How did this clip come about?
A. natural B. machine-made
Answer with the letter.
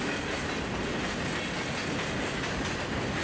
A